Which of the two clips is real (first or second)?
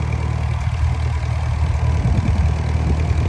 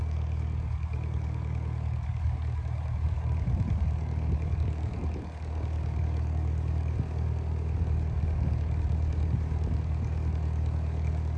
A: first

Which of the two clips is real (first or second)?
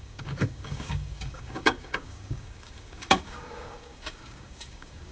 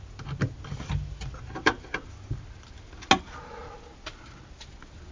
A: second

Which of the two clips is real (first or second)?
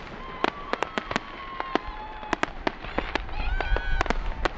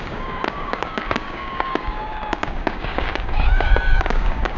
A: first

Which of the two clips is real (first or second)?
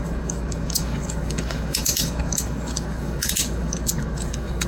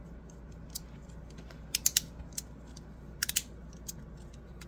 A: second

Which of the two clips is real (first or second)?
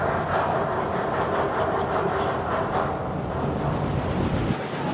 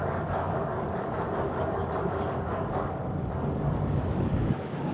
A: first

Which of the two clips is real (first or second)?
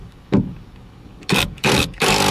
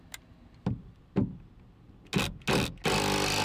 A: second